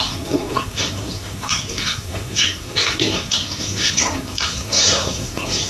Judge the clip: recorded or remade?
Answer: remade